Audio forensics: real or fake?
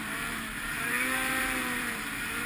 fake